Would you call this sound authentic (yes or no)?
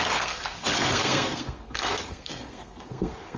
no